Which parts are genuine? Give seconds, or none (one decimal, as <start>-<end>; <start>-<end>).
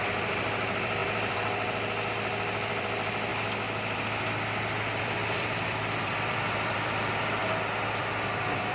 3.3-5.0; 7.4-8.0